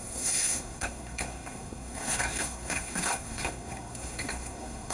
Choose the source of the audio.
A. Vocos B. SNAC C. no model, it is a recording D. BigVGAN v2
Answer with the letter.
B